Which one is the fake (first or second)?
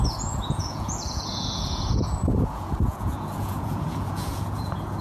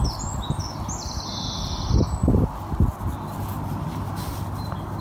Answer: first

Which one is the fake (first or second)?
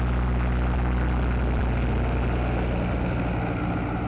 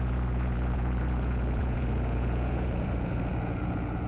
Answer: second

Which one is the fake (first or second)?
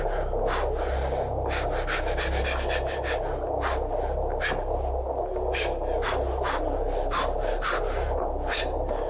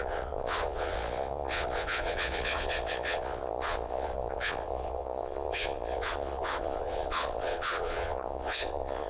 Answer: second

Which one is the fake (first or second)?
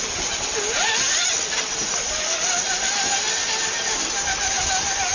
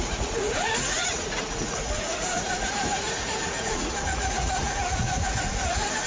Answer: second